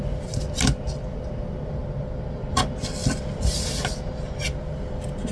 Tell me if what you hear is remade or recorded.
recorded